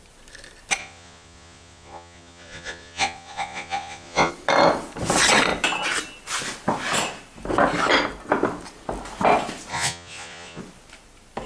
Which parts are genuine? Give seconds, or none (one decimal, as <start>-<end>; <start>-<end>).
0.0-0.8; 4.3-9.7; 10.6-11.5